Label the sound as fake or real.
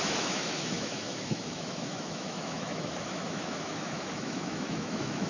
fake